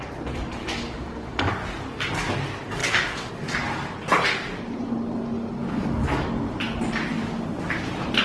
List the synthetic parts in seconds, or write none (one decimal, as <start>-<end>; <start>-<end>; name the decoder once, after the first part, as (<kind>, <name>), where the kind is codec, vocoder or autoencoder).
0.6-1.5 (codec, DAC); 2.8-3.3; 5.6-6.4